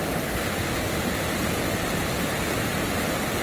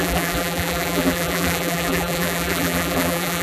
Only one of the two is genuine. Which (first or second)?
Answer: first